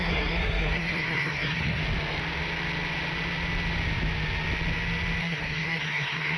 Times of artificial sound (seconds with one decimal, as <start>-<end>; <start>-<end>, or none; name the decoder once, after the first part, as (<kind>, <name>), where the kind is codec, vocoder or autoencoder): 0.0-1.8 (codec, SNAC); 5.2-6.4